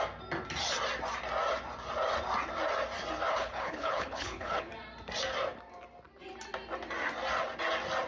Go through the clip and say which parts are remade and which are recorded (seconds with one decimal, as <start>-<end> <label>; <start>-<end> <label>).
0.0-3.3 recorded; 3.3-4.7 remade; 4.7-8.1 recorded